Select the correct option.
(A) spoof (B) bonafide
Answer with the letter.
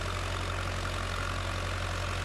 B